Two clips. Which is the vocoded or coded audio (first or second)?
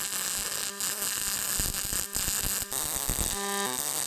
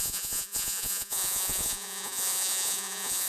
second